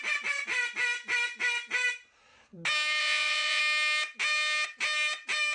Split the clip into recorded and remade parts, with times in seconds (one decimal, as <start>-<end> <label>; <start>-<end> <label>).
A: 0.0-3.0 recorded; 3.0-3.6 remade; 3.6-5.5 recorded